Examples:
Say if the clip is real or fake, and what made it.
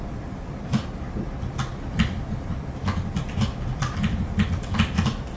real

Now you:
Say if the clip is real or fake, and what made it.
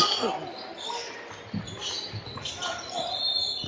real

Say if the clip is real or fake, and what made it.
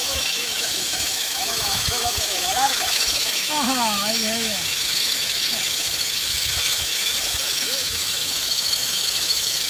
fake, autoencoder, DAC-VAE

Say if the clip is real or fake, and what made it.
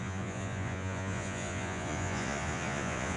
fake, vocoder, Vocos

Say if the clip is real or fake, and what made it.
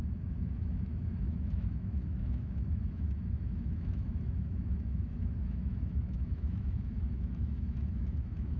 fake, autoencoder, DAC-VAE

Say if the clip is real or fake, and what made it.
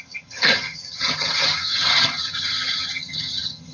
fake, vocoder, HiFi-GAN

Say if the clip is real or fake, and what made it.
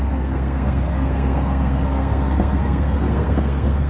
fake, codec, SNAC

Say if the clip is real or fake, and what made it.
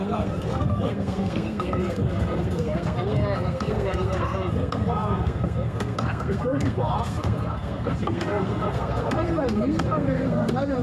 fake, codec, SNAC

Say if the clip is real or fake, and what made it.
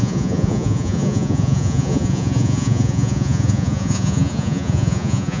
fake, vocoder, Vocos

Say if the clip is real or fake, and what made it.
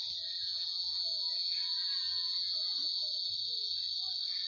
real